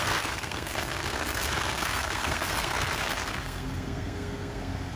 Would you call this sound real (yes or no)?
no